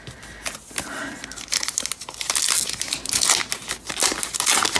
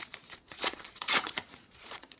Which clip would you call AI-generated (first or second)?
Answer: second